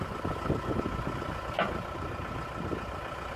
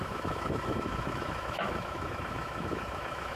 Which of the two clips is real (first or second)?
first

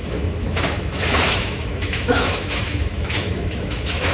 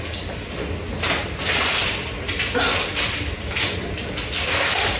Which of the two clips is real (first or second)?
second